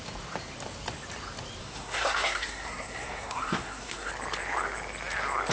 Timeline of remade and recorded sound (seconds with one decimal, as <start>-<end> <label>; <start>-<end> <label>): 0.0-1.6 recorded; 1.6-4.1 remade; 4.1-5.5 recorded